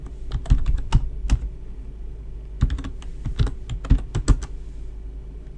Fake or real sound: real